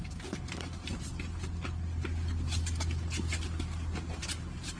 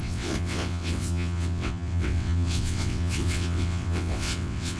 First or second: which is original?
first